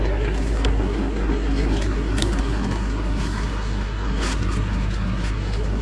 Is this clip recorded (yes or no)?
no